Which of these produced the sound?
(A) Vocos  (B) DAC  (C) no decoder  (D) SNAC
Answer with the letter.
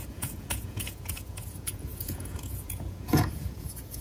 A